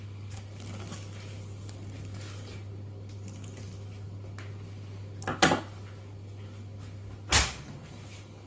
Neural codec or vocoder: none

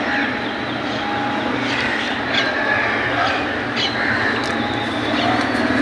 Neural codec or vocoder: none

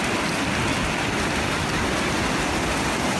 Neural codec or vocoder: none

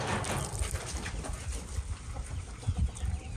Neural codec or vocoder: none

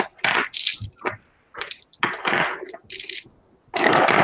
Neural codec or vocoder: none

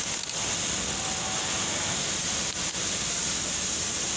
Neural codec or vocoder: none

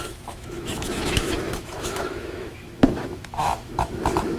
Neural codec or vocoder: autoencoder, DAC-VAE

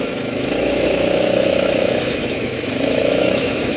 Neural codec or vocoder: autoencoder, DAC-VAE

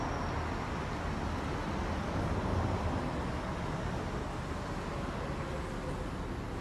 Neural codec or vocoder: none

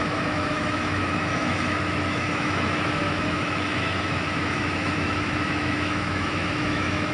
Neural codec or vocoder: autoencoder, DAC-VAE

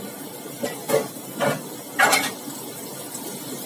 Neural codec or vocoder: none